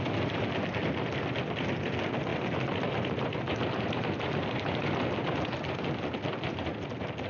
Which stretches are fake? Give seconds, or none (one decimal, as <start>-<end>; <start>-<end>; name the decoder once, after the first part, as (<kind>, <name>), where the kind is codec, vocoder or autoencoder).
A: none